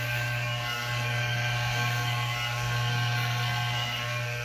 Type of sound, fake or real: fake